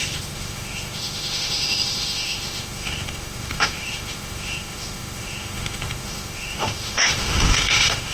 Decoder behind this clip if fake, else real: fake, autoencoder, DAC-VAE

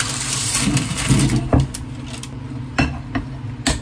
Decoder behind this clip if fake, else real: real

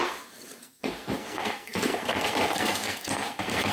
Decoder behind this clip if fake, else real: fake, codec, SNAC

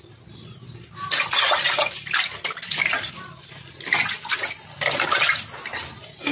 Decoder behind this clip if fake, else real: real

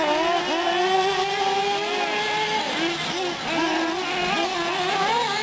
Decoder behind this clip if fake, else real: real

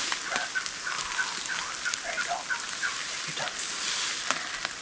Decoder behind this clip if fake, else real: real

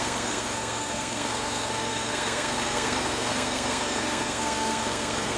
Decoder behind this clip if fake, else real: fake, codec, SNAC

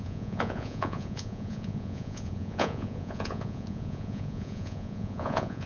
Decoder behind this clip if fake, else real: fake, vocoder, Vocos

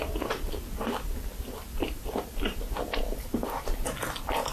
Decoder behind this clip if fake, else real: real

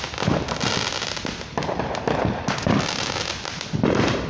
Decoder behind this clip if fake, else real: real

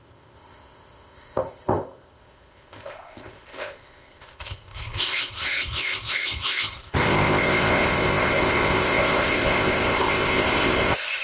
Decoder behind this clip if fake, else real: fake, codec, ZipCodec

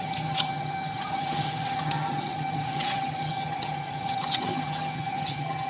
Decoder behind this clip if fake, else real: fake, vocoder, HiFi-GAN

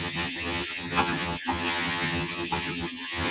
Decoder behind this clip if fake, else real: fake, vocoder, HiFi-GAN